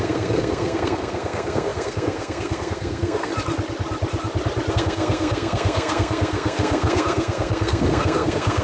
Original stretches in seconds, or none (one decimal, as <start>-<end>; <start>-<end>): 3.3-4.7